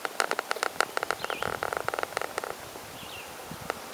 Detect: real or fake real